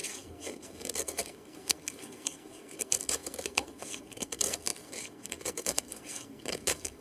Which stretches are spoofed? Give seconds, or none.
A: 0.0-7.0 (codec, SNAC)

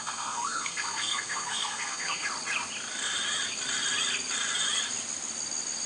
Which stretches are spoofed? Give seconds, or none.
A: 0.0-2.2 (codec, SNAC)

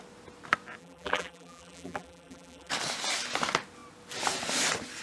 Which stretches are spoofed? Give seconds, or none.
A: 0.8-2.7 (vocoder, BigVGAN v2)

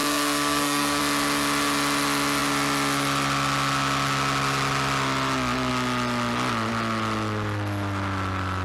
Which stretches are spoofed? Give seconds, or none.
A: 0.0-1.0 (codec, SNAC)

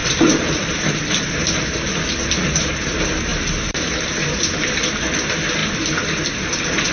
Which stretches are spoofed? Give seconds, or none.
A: 0.0-2.9 (vocoder, BigVGAN v2); 3.3-5.0